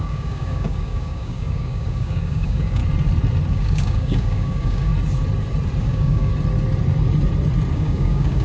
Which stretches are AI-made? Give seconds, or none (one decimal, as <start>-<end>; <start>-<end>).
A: 0.0-2.8; 3.5-4.9; 5.8-6.3; 7.7-8.4